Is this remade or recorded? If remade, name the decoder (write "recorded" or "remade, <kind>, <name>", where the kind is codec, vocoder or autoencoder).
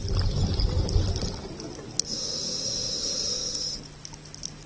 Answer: recorded